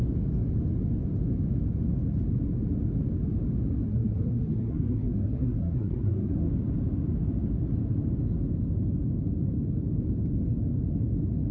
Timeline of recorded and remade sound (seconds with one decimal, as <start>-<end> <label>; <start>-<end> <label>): 0.0-3.9 recorded; 3.9-6.5 remade; 6.5-11.5 recorded